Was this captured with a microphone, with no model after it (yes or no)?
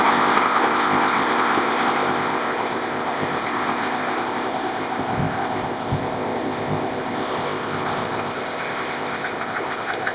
no